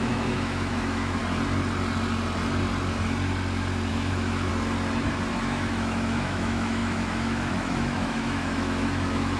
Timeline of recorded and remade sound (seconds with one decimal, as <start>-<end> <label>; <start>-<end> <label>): 0.0-1.2 remade; 1.2-3.9 recorded; 3.9-4.5 remade; 4.5-5.3 recorded; 5.3-9.4 remade